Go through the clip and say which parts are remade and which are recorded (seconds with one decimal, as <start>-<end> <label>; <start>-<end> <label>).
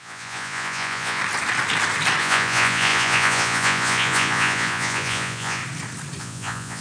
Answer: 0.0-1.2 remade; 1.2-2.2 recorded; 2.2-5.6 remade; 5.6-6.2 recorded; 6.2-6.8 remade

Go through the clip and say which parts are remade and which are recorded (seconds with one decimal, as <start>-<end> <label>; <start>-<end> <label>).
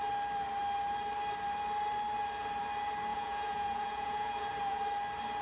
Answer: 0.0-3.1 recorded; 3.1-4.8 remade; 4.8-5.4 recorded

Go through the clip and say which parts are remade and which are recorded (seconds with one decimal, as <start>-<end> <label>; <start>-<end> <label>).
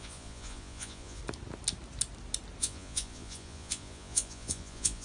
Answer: 0.0-1.2 remade; 1.2-2.6 recorded; 2.6-5.0 remade